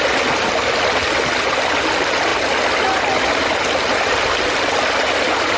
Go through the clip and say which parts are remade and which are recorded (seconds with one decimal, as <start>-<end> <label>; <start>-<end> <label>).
0.0-5.6 recorded